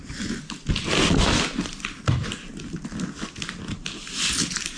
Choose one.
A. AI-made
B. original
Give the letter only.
B